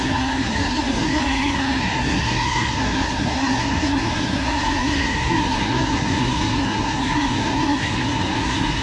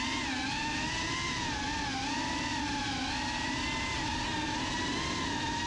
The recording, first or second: second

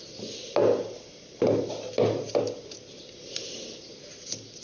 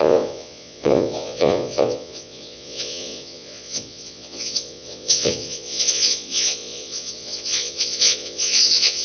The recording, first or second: first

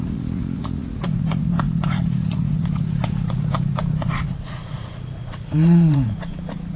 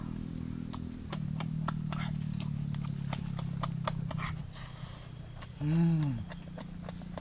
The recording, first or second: second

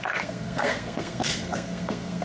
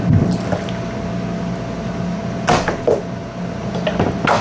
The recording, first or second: second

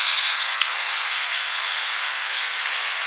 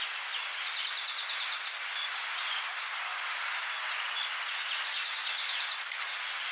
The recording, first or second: second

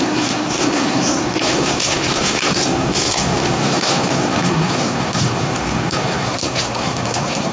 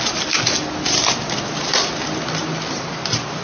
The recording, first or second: second